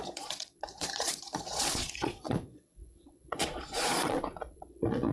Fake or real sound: fake